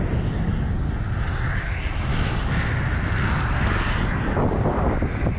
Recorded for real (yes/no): yes